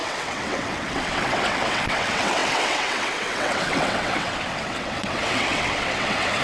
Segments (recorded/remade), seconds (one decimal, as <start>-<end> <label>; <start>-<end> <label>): 0.0-6.4 remade